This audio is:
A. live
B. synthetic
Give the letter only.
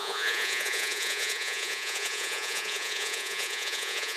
B